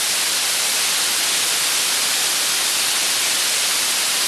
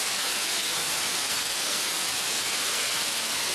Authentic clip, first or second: first